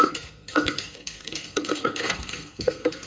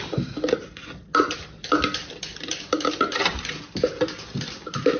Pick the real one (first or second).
second